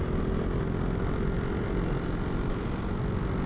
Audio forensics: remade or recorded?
recorded